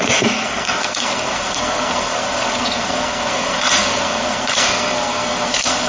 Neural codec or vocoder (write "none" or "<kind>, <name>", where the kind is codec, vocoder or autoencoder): codec, SNAC